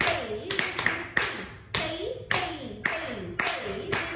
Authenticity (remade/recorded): recorded